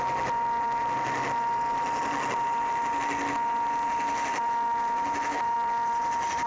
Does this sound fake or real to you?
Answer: real